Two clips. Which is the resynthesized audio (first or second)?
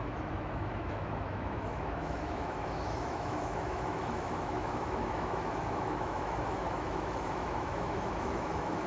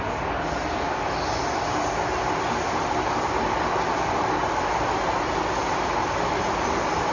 first